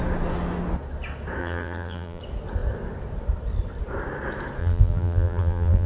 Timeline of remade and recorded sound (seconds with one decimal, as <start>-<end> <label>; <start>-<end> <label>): 0.0-1.4 recorded; 1.4-2.2 remade; 2.2-4.6 recorded; 4.6-5.9 remade